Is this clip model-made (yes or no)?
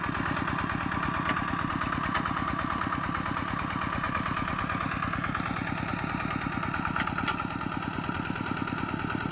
no